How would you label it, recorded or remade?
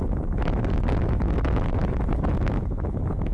remade